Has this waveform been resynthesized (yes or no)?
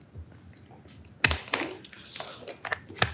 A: no